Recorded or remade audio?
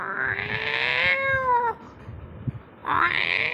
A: recorded